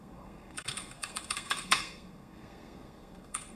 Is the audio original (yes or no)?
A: no